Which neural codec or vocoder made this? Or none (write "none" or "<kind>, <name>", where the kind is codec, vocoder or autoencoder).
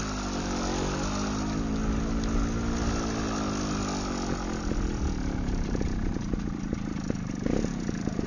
none